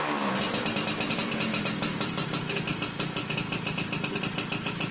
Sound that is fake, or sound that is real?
real